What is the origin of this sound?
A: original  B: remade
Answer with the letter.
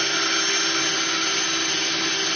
A